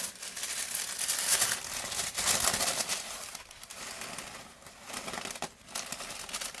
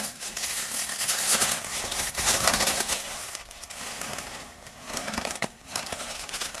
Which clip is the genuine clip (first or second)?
first